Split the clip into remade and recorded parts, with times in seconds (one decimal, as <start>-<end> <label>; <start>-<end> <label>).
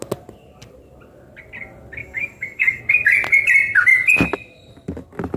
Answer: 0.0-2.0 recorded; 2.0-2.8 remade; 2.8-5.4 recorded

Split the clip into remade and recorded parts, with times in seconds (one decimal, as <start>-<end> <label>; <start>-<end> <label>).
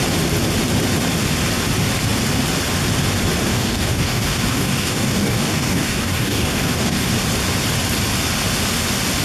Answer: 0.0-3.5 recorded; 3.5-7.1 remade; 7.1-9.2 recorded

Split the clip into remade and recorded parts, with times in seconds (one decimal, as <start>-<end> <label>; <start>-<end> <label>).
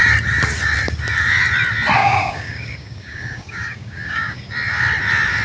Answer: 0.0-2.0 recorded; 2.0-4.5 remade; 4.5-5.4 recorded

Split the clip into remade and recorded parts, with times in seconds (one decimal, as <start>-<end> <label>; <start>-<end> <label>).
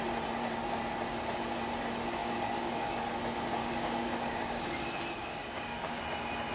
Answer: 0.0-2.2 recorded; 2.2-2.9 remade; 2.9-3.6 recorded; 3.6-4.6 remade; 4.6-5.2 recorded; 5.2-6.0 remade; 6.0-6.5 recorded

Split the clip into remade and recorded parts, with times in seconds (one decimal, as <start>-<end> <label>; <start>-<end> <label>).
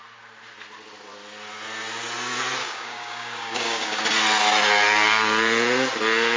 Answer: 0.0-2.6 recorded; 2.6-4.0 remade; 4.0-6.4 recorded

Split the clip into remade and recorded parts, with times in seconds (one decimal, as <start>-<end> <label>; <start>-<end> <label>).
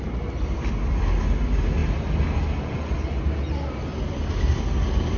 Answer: 0.0-5.2 recorded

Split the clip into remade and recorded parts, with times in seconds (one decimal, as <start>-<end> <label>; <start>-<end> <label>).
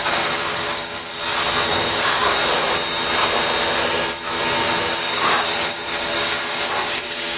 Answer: 0.0-1.1 remade; 1.1-1.7 recorded; 1.7-2.4 remade; 2.4-4.8 recorded; 4.8-7.4 remade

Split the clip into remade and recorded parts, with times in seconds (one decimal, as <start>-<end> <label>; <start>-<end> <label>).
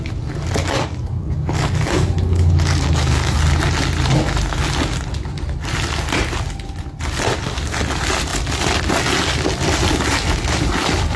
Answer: 0.0-0.6 recorded; 0.6-3.4 remade; 3.4-11.2 recorded